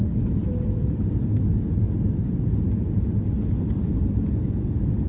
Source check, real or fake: real